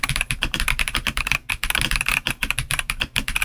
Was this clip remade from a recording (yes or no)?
yes